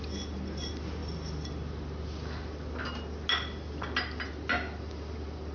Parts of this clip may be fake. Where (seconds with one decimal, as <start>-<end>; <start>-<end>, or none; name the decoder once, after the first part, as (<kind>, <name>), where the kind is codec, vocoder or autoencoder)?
none